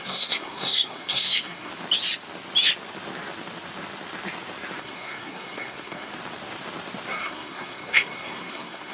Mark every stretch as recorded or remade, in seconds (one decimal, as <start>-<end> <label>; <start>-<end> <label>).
0.0-1.7 remade; 1.7-4.8 recorded; 4.8-6.1 remade; 6.1-7.1 recorded; 7.1-8.9 remade